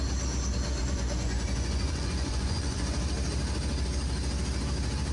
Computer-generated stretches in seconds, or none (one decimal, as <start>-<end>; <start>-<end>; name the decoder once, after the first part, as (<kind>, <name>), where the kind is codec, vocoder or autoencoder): 0.8-3.1 (vocoder, Vocos)